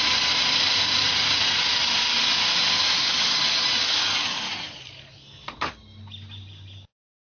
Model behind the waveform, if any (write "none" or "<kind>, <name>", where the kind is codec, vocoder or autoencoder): none